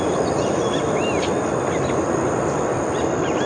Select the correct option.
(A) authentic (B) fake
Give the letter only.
A